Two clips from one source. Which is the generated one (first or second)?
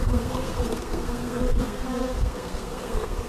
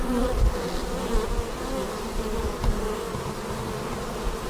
first